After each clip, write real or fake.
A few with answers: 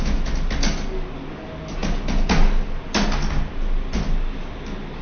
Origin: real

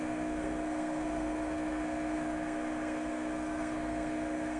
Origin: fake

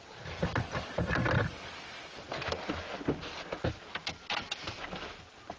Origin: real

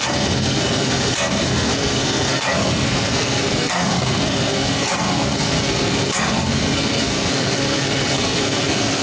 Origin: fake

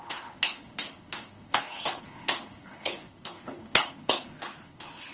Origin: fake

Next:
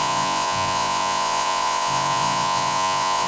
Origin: fake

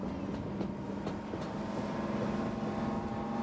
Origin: real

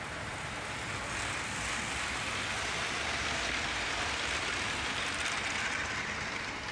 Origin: real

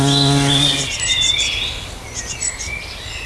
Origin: real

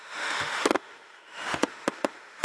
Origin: fake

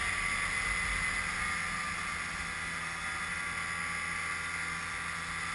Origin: real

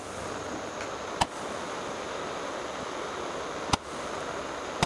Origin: real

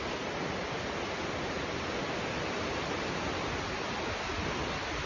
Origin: real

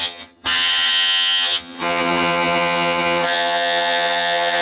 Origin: fake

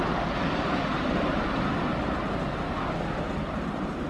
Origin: real